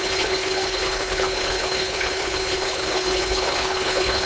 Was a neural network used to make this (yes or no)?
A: yes